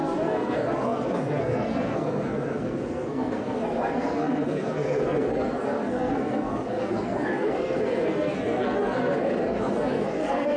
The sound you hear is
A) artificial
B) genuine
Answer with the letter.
A